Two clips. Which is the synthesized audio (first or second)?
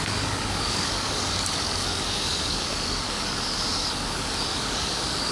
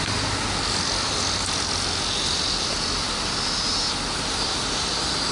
first